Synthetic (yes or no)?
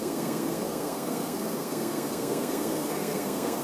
yes